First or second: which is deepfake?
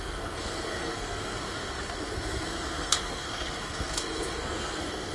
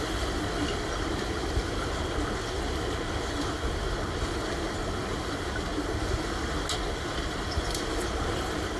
first